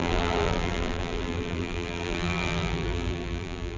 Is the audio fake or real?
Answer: fake